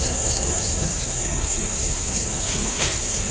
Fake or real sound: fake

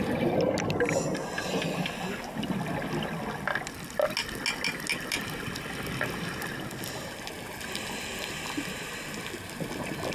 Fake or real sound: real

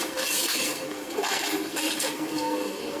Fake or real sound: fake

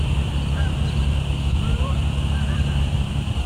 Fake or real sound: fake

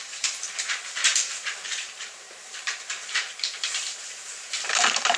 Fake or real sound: fake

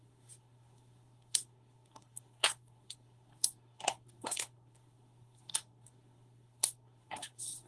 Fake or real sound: fake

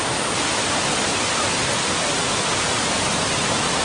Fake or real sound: real